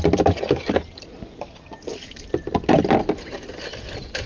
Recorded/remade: recorded